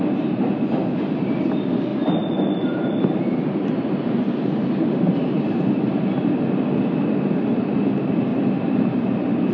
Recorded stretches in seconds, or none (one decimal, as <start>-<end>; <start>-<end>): 0.0-1.9; 5.9-8.3